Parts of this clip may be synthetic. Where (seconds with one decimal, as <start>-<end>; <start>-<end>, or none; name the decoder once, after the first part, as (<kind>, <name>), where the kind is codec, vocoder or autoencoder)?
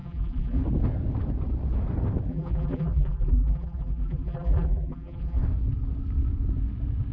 0.0-0.6 (vocoder, BigVGAN v2); 2.3-5.4